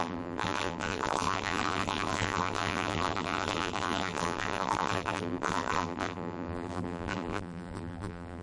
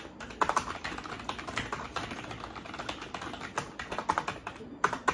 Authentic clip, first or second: second